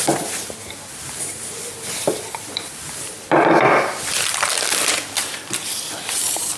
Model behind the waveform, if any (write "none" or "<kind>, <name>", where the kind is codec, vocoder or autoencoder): vocoder, BigVGAN v2